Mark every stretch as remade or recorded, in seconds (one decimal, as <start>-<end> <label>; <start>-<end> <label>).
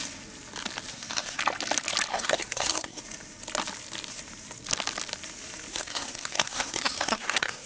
0.0-0.9 recorded; 0.9-1.4 remade; 1.4-2.1 recorded; 2.1-3.0 remade; 3.0-5.7 recorded; 5.7-7.7 remade